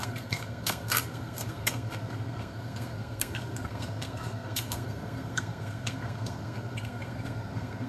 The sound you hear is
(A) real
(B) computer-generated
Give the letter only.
B